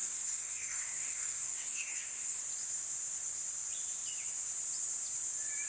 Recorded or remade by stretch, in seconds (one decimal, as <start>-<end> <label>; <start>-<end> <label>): 0.0-2.4 remade; 2.4-5.7 recorded